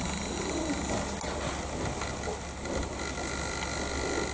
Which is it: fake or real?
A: real